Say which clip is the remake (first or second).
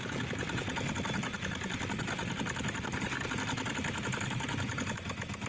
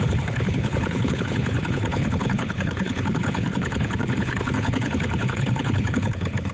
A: second